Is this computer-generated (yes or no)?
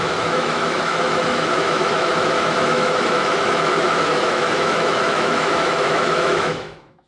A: yes